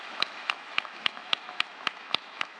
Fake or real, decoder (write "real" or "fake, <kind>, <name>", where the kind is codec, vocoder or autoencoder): fake, autoencoder, DAC-VAE